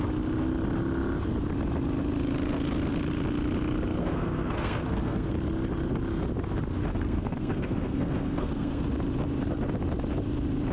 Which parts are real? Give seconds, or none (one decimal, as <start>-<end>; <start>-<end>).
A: 0.0-4.0; 5.3-6.9; 8.8-10.7